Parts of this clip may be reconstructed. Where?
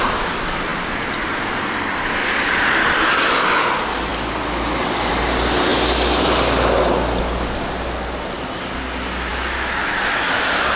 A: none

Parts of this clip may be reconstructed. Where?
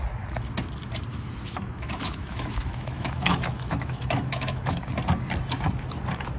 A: 1.1-4.9 (autoencoder, DAC-VAE)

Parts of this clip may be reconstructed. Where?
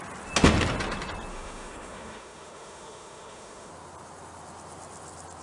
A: 1.3-3.7 (autoencoder, DAC-VAE)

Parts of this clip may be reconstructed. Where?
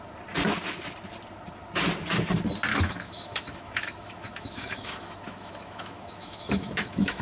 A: 2.7-7.2 (autoencoder, DAC-VAE)